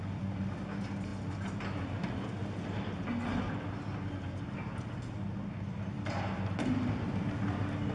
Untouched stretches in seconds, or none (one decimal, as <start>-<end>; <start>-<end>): 0.0-7.9